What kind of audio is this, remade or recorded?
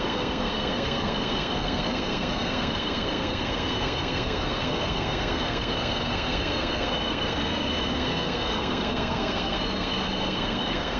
remade